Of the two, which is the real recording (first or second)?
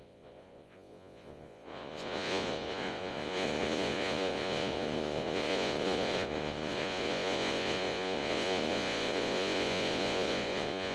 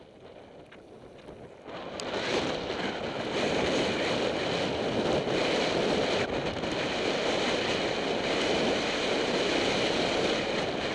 second